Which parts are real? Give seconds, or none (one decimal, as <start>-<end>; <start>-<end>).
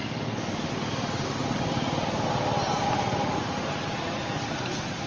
0.0-5.1